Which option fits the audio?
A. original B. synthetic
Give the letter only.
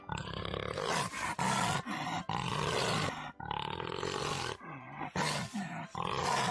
A